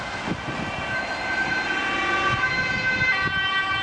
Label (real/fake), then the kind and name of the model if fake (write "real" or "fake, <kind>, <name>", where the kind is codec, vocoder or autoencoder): real